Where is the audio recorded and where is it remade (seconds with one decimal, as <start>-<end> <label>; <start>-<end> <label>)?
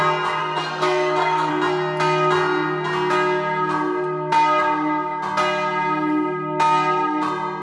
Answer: 0.0-0.4 recorded; 0.4-1.5 remade; 1.5-7.6 recorded